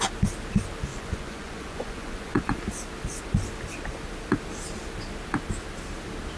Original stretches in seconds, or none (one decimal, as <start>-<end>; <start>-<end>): 0.0-0.9; 2.6-6.4